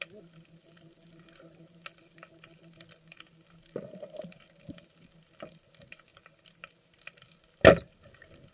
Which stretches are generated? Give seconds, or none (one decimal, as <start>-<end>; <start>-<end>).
none